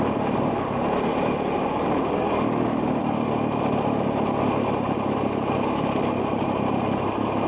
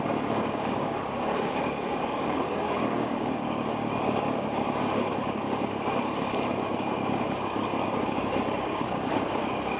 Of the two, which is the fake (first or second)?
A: second